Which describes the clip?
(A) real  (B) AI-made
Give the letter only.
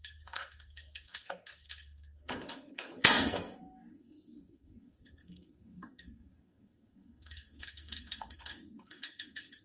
B